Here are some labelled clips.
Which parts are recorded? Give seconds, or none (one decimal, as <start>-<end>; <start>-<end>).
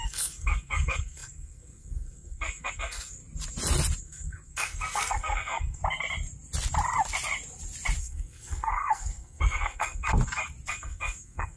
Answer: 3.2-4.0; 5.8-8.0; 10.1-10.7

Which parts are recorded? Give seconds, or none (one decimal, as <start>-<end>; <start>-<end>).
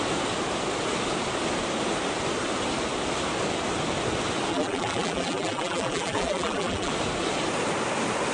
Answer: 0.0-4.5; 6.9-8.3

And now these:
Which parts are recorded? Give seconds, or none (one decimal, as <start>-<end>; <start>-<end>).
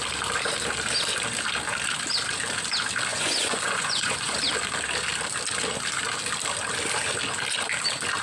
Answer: 0.0-3.1; 4.4-8.2